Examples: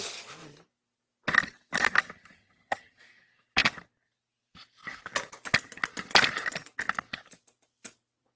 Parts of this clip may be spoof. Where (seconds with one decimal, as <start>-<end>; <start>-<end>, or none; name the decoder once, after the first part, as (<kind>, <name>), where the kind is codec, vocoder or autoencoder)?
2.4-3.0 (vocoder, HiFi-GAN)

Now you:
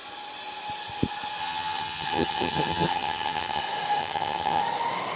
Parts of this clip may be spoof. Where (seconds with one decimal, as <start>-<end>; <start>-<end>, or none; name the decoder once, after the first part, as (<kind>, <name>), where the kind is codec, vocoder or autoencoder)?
1.4-3.6 (vocoder, HiFi-GAN); 4.0-4.6

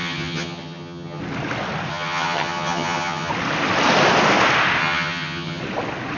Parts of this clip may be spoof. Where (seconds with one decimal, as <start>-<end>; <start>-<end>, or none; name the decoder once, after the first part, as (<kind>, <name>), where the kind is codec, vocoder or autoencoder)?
0.0-1.2 (vocoder, HiFi-GAN); 1.9-3.3; 4.8-5.6

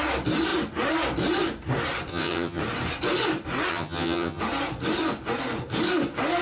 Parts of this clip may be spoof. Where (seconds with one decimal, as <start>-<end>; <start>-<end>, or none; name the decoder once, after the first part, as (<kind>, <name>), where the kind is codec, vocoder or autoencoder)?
2.1-2.6 (vocoder, HiFi-GAN); 3.7-4.4

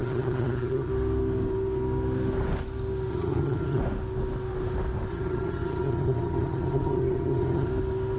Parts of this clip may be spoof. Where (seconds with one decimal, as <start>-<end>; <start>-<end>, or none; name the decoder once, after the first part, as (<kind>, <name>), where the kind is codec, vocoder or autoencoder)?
0.0-0.9 (vocoder, HiFi-GAN); 3.1-3.8; 5.1-7.7

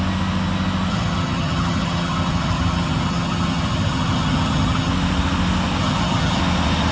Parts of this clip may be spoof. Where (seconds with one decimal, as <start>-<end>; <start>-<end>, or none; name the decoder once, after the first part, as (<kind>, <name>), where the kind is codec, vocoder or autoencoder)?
0.9-4.9 (vocoder, HiFi-GAN); 5.8-6.4

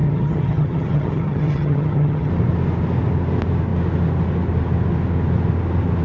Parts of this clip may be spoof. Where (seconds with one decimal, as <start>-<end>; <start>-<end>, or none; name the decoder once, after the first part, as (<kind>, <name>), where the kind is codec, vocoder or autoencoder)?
0.0-2.3 (vocoder, HiFi-GAN)